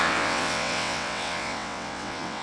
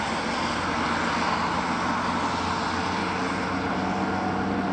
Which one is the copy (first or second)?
first